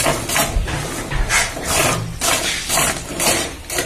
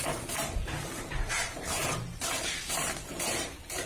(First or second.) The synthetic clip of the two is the second